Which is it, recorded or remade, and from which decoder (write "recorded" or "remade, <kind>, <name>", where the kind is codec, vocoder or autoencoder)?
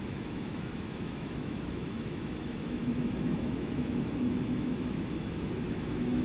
remade, autoencoder, DAC-VAE